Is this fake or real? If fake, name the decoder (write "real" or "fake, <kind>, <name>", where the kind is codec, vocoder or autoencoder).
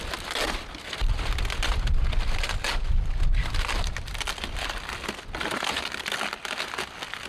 real